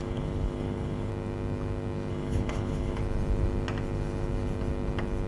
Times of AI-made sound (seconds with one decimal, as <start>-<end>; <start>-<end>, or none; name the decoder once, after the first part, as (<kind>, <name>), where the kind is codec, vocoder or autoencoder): 0.0-1.1 (codec, HILCodec); 2.1-3.0